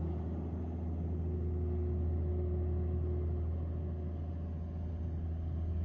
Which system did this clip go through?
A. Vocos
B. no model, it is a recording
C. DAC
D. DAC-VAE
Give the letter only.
B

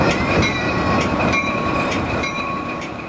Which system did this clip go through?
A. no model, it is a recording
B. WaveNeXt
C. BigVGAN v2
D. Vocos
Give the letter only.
C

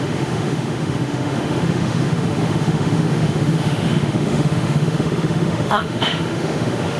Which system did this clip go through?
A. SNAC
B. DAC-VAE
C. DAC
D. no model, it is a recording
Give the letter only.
B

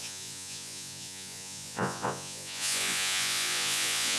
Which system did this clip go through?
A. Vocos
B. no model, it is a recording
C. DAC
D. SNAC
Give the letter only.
A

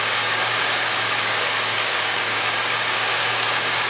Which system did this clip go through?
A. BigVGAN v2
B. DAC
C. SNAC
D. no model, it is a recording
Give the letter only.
B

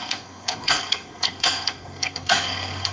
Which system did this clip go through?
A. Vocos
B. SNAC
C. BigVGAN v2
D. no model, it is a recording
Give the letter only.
B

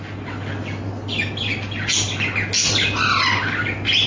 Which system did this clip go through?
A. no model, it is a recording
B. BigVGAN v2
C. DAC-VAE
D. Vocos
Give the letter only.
A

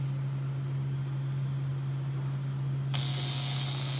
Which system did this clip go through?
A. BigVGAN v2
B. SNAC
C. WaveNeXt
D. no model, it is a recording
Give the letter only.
D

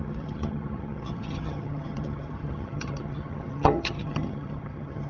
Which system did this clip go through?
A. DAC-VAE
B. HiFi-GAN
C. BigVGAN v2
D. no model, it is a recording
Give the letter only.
B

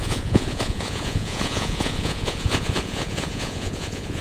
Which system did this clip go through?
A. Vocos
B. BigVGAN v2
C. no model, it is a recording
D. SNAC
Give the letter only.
A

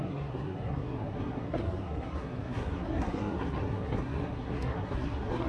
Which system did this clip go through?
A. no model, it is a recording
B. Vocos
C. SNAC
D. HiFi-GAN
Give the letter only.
C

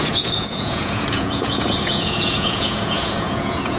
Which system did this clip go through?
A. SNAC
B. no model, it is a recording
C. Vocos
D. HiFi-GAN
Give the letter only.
C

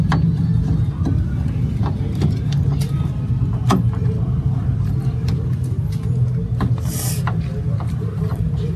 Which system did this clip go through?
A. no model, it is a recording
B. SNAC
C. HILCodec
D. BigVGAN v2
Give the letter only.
A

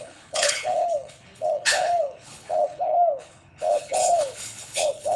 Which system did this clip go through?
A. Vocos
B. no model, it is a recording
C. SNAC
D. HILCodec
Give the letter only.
D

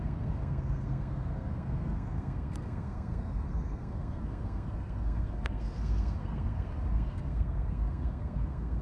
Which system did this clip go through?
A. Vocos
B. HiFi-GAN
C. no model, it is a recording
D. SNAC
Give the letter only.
D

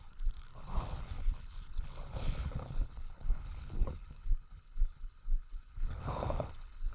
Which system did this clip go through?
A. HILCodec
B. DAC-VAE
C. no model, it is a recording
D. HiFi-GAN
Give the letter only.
A